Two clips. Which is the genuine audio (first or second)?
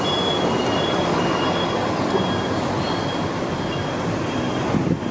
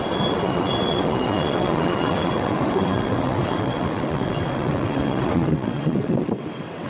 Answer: first